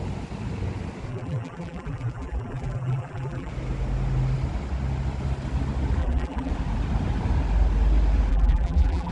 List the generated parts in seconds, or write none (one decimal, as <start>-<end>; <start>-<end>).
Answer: 1.1-3.5; 6.0-6.5; 8.3-9.1